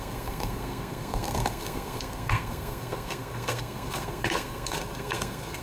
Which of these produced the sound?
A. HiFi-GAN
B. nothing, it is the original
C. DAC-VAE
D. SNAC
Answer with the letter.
D